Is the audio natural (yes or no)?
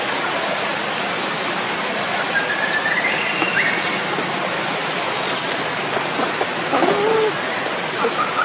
yes